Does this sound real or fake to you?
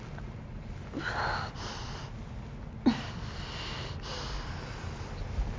real